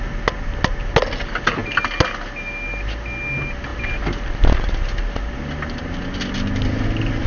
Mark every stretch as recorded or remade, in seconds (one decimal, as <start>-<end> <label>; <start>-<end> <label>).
0.0-7.3 recorded